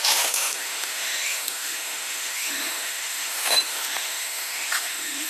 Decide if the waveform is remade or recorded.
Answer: remade